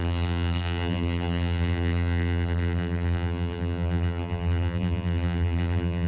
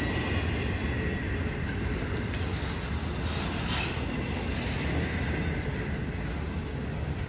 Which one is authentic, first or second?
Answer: second